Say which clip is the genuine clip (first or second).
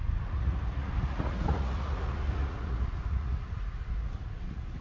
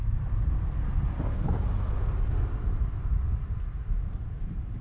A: second